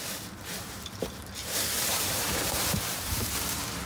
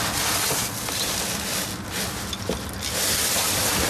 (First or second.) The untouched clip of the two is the second